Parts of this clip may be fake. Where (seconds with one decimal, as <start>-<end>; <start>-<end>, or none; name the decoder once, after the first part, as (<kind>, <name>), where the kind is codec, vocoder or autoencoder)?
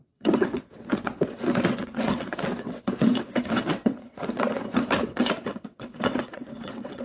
0.0-7.0 (vocoder, WaveNeXt)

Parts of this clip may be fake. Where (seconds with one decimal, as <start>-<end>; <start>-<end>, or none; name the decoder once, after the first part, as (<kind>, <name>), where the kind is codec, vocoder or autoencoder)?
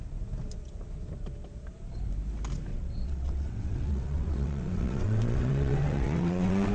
2.7-6.7 (vocoder, WaveNeXt)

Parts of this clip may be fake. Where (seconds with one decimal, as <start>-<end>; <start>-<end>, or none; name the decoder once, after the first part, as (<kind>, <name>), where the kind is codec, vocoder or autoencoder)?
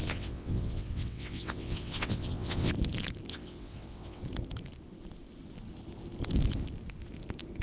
0.0-2.7 (vocoder, WaveNeXt); 3.3-4.2